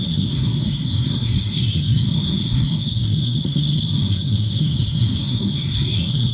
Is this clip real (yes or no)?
no